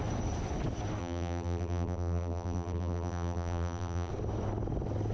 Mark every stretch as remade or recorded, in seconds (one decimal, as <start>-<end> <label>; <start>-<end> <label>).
0.0-1.0 recorded; 1.0-4.1 remade; 4.1-5.1 recorded